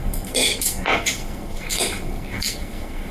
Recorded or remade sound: remade